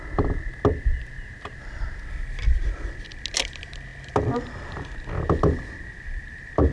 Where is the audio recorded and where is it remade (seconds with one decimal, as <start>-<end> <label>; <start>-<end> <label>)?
0.0-6.7 recorded